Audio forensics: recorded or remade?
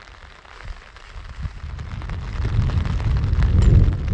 recorded